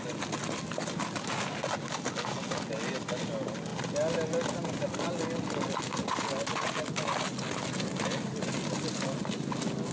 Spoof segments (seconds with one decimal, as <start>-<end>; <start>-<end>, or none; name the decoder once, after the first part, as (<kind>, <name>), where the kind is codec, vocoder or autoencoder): none